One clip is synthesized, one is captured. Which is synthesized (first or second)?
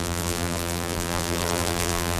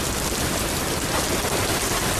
first